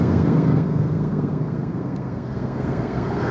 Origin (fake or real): fake